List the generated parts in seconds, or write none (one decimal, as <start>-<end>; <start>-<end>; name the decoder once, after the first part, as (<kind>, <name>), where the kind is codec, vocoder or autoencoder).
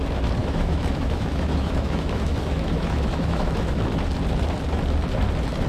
0.4-3.8 (autoencoder, DAC-VAE)